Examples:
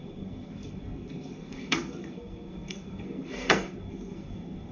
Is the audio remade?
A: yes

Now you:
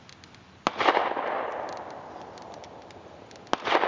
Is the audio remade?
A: no